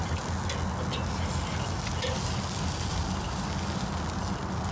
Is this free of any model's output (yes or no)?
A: yes